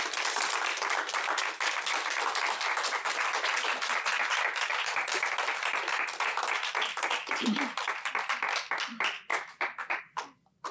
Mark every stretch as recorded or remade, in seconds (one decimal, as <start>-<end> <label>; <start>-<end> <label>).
0.0-4.7 recorded; 4.7-6.7 remade; 6.7-10.7 recorded